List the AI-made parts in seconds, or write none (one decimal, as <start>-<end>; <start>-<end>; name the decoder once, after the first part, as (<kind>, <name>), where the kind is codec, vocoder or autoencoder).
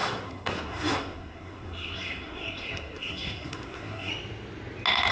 0.0-4.1 (codec, SNAC)